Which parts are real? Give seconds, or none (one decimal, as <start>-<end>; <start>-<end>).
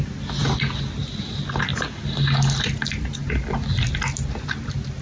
0.0-5.0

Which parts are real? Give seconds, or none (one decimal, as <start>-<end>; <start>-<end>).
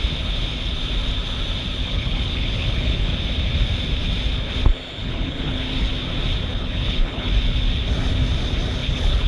0.0-1.8; 3.1-5.0; 5.9-6.5; 7.3-8.8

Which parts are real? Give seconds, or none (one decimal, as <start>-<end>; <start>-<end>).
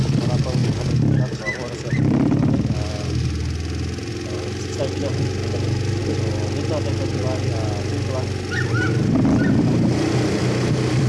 0.0-11.1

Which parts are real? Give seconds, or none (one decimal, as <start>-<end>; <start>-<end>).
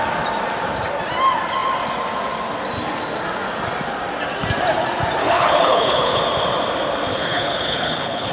0.0-5.2; 6.2-7.1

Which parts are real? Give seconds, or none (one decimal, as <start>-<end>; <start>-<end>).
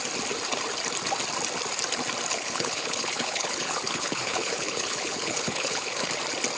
0.0-2.3; 6.1-6.6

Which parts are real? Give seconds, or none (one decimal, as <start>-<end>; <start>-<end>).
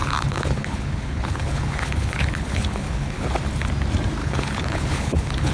3.3-4.2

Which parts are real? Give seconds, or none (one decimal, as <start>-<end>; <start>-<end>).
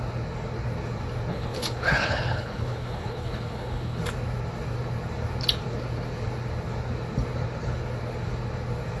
0.0-1.3; 4.0-9.0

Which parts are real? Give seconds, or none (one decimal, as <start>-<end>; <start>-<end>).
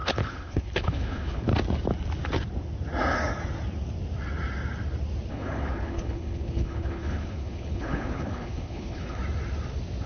1.5-5.3; 9.2-10.1